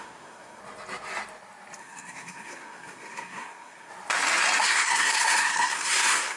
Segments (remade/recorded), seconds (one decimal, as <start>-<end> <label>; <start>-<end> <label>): 0.0-0.6 remade; 0.6-1.8 recorded; 1.8-3.9 remade; 3.9-4.6 recorded; 4.6-6.4 remade